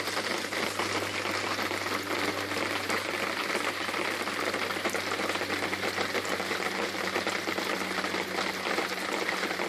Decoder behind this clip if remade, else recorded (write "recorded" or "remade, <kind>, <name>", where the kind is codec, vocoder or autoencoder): recorded